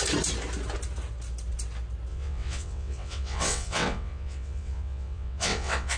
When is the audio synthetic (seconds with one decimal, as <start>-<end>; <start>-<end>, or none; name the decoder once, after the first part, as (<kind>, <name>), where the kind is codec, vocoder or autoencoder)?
2.1-6.0 (vocoder, WaveNeXt)